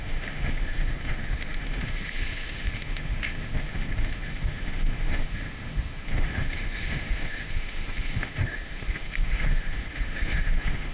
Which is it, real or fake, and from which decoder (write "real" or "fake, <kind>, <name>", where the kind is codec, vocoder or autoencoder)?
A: fake, autoencoder, DAC-VAE